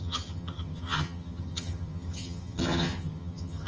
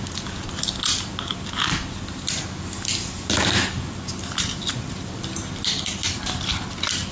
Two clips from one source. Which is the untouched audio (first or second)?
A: second